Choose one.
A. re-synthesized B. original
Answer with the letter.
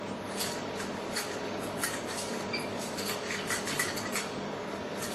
A